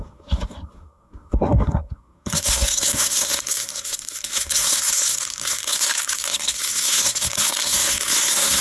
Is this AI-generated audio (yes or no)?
yes